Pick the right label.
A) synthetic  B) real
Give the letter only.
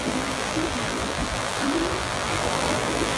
A